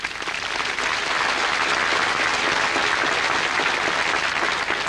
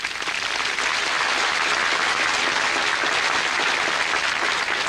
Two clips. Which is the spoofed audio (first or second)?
second